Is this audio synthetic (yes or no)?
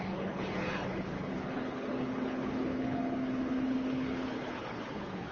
yes